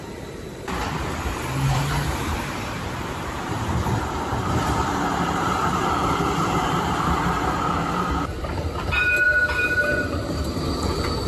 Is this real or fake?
fake